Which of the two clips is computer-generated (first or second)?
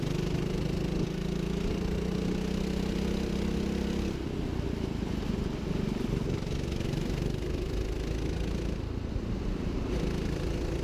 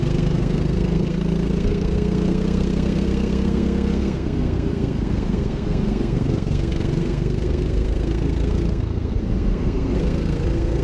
second